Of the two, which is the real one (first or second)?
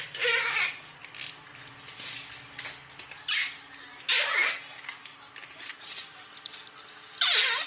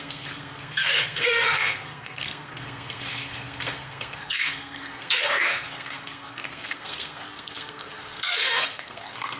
first